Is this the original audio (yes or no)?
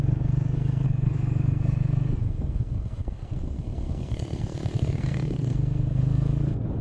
no